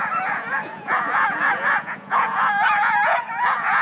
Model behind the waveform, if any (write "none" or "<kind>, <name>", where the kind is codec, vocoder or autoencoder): vocoder, Vocos